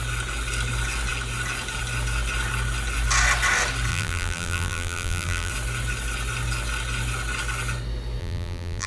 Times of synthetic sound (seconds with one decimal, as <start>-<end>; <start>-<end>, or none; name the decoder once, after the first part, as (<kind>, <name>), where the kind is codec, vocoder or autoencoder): 3.9-5.5 (vocoder, BigVGAN v2); 8.2-8.9